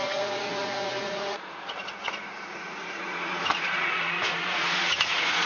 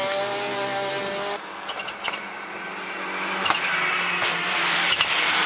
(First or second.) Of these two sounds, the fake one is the first